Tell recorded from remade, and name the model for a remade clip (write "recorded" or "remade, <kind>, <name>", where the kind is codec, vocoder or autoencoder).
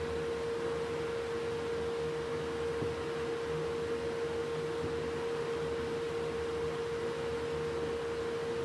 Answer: recorded